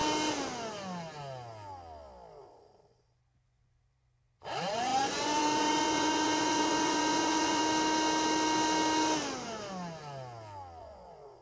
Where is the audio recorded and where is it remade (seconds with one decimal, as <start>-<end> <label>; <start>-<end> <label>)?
0.0-2.4 recorded; 2.4-7.6 remade; 7.6-10.8 recorded; 10.8-11.4 remade